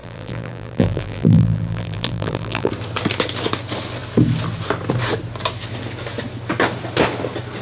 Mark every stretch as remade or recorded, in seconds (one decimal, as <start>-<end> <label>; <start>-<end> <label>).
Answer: 0.0-2.7 remade; 2.7-7.6 recorded